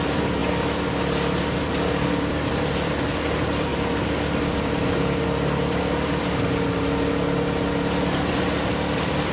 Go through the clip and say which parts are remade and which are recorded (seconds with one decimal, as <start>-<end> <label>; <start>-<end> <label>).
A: 0.0-0.4 remade; 0.4-1.7 recorded; 1.7-3.7 remade; 3.7-8.3 recorded; 8.3-9.3 remade